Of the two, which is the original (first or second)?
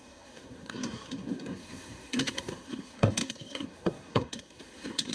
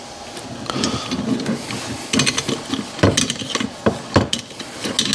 second